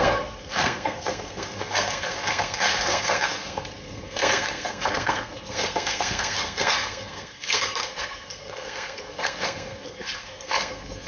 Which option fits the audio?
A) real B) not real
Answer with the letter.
B